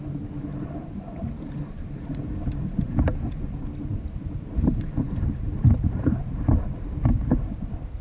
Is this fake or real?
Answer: fake